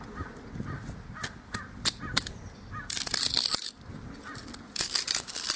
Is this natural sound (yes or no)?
yes